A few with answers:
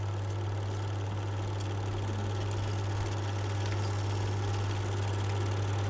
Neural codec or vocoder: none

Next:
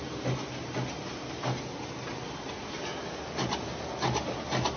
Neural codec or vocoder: none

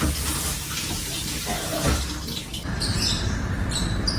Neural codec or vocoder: vocoder, BigVGAN v2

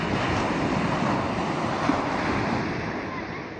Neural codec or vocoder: none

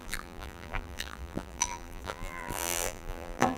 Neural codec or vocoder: vocoder, BigVGAN v2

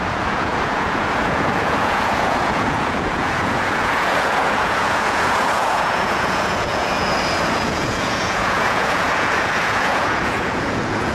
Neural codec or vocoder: vocoder, Vocos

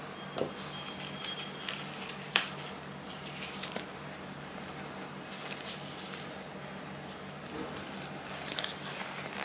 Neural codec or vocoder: none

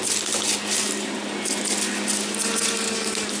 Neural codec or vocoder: none